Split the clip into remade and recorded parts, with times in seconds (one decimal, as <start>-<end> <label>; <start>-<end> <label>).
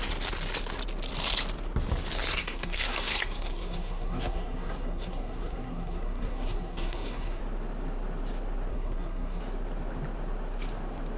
0.0-2.4 recorded; 2.4-7.4 remade; 7.4-8.7 recorded; 8.7-9.4 remade; 9.4-11.2 recorded